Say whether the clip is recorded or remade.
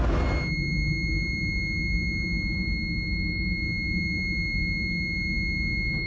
recorded